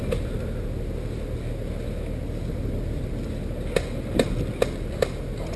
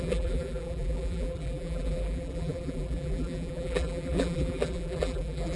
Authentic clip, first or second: first